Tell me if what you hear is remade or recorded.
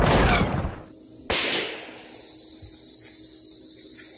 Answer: recorded